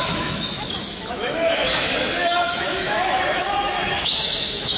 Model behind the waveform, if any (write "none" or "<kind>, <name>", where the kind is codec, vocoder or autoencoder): autoencoder, DAC-VAE